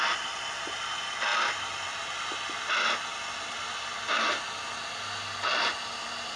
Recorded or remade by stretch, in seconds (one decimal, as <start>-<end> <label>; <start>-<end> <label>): 0.0-6.4 recorded